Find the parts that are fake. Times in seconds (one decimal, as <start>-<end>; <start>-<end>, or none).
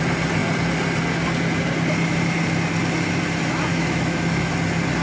3.7-4.5